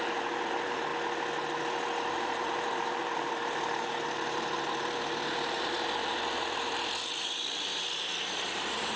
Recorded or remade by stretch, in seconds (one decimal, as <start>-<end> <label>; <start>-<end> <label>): 0.0-0.9 remade; 0.9-2.1 recorded; 2.1-9.0 remade